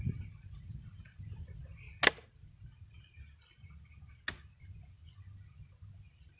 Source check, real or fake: real